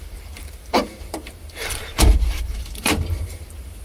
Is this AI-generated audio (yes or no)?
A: yes